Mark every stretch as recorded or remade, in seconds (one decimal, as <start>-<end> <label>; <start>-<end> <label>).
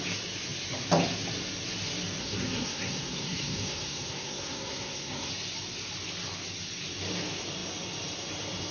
0.0-2.2 recorded; 2.2-5.3 remade; 5.3-8.7 recorded